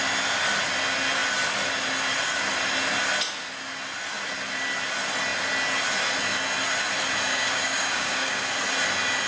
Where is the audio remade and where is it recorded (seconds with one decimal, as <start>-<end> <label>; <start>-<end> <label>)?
0.0-7.3 recorded; 7.3-8.4 remade; 8.4-9.3 recorded